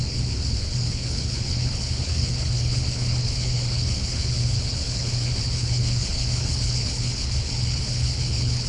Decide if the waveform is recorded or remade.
remade